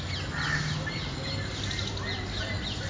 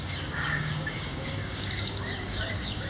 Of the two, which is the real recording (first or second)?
first